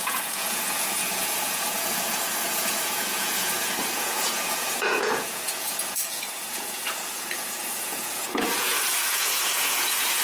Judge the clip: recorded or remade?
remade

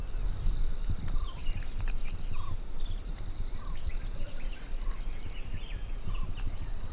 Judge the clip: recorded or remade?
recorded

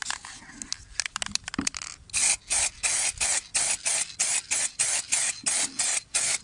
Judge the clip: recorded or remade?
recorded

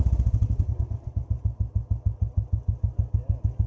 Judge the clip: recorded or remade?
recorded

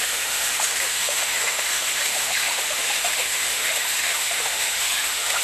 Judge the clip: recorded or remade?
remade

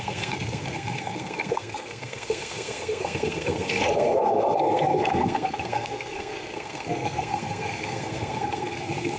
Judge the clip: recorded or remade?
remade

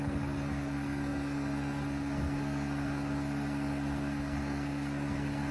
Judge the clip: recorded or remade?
remade